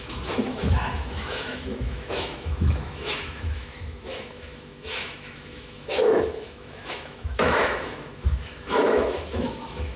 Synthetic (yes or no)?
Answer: yes